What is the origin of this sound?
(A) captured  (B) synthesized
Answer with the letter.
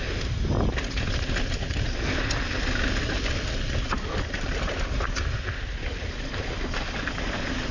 A